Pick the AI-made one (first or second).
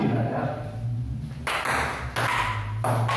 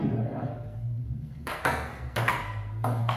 second